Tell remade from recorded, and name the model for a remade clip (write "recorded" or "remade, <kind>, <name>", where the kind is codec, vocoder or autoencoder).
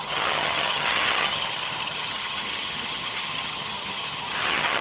remade, vocoder, HiFi-GAN